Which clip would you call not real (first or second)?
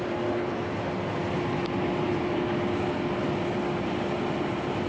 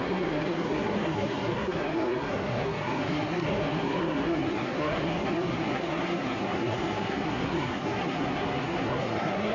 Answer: second